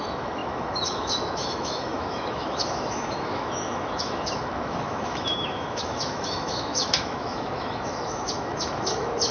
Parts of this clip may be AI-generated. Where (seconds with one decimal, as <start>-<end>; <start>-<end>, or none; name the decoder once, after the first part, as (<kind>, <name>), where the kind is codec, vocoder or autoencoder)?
0.0-9.3 (autoencoder, DAC-VAE)